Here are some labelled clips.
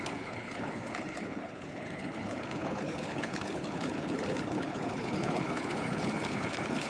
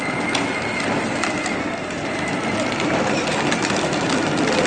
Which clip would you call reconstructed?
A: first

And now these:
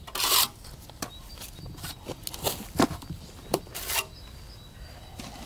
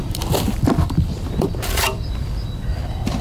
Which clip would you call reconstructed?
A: second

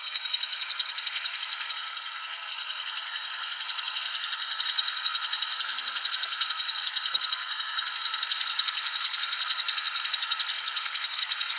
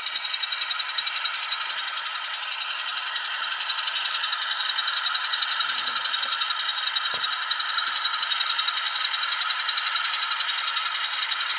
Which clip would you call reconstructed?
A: first